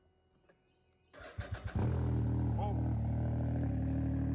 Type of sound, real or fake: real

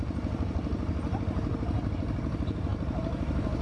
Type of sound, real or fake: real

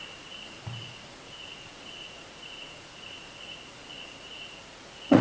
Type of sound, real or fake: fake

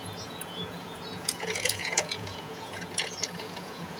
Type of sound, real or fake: fake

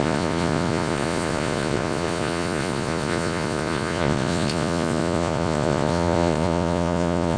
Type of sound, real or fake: fake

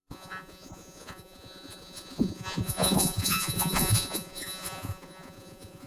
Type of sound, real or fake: fake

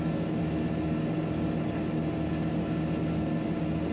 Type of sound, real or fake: real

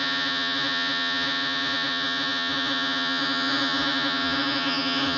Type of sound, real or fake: fake